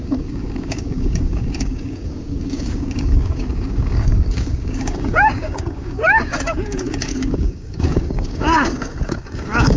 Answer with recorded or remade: remade